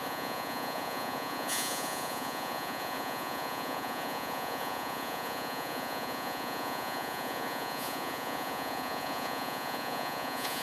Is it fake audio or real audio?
fake